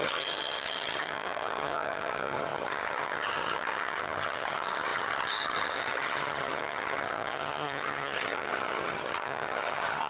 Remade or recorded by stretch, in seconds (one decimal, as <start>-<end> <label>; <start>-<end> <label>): 0.0-10.1 remade